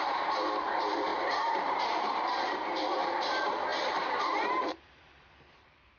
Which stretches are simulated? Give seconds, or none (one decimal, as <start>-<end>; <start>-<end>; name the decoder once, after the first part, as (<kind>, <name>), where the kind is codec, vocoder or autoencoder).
0.0-6.0 (vocoder, BigVGAN v2)